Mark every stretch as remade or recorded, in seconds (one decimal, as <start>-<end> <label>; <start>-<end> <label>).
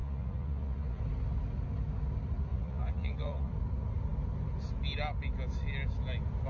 0.0-1.0 remade; 1.0-2.5 recorded; 2.5-3.5 remade; 3.5-6.5 recorded